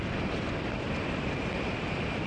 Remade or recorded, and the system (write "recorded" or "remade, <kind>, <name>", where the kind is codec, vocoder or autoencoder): recorded